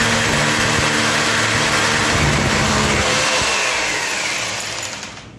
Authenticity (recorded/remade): recorded